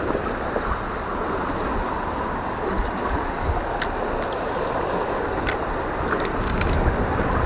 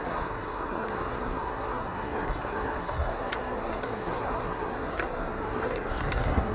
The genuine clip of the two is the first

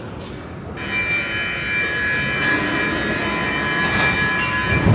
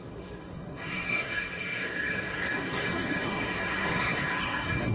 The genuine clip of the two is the first